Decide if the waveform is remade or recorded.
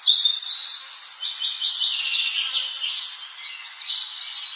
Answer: recorded